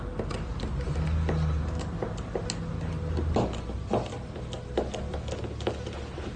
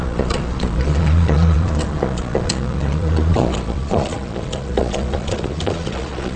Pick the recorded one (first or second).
first